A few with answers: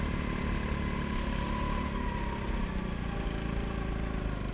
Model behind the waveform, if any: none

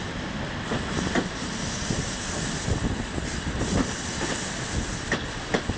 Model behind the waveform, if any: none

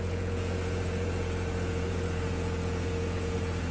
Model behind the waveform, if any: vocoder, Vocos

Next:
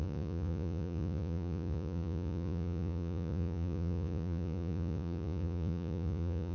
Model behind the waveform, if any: vocoder, Vocos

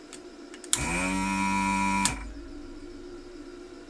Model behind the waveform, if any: none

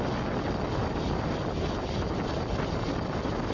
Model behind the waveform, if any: none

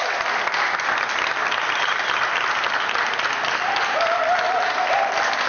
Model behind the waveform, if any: none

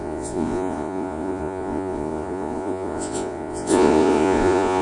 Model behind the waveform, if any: vocoder, Vocos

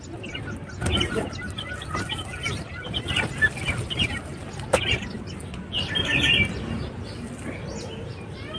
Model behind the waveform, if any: none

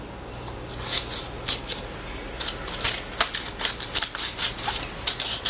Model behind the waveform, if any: none